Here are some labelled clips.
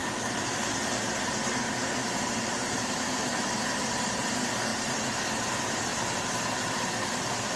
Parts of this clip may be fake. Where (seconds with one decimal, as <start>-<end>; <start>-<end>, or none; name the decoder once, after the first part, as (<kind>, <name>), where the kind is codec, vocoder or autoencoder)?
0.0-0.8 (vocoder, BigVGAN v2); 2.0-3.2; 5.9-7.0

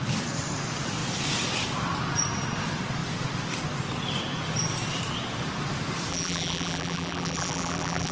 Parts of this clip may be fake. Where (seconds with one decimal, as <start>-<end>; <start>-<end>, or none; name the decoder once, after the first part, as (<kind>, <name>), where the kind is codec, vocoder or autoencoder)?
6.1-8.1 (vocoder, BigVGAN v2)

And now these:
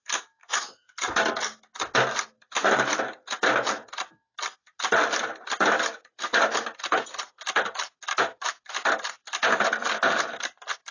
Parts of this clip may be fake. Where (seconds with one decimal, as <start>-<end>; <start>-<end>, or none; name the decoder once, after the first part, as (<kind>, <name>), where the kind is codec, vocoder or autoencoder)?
none